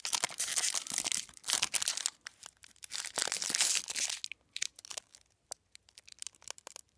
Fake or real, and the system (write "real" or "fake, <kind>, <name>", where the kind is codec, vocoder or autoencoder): real